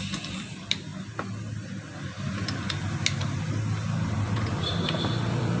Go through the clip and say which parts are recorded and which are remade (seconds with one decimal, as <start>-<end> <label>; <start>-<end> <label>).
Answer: 0.0-0.9 remade; 0.9-4.2 recorded; 4.2-5.6 remade